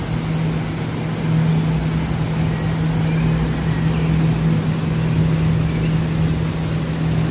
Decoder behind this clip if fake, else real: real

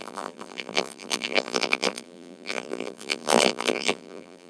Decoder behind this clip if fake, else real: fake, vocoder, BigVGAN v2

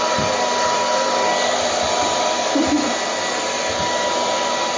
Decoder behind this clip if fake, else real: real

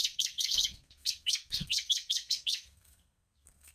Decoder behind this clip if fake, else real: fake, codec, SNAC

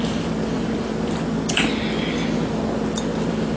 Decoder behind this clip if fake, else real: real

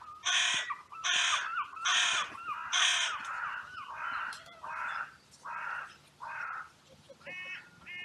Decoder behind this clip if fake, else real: real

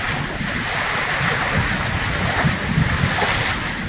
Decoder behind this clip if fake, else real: real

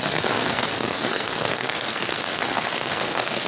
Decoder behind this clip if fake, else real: fake, codec, SNAC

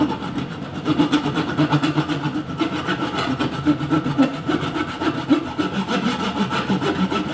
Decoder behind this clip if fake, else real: real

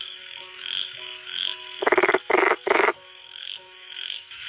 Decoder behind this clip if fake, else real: fake, autoencoder, DAC-VAE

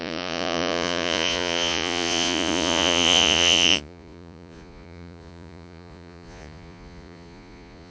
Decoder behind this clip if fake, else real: fake, vocoder, Vocos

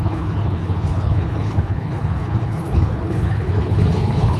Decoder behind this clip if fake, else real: fake, codec, HILCodec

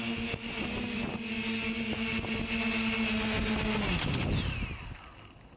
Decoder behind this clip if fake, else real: real